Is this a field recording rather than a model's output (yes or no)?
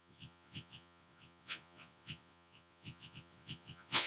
no